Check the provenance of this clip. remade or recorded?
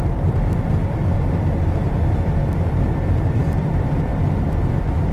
remade